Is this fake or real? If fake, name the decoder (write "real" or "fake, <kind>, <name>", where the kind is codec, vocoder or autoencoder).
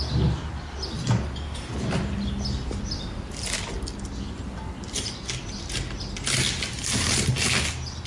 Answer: real